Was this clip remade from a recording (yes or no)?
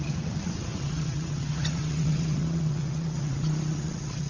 yes